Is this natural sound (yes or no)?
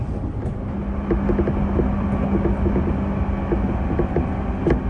yes